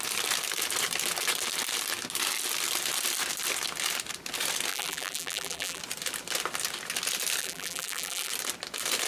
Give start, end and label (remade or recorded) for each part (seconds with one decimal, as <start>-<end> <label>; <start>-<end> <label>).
0.0-4.7 recorded; 4.7-5.8 remade; 5.8-7.4 recorded; 7.4-8.3 remade; 8.3-9.1 recorded